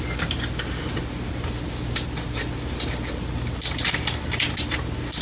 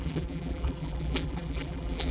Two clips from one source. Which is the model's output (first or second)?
second